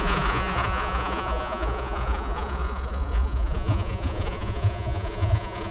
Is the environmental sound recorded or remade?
remade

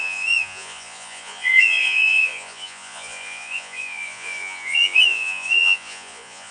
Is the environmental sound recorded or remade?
remade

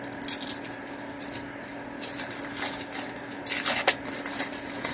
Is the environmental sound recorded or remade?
recorded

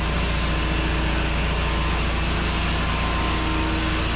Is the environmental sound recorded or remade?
recorded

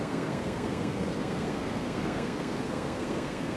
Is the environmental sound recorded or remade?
remade